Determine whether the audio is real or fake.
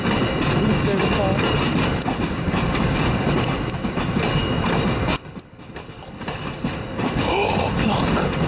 real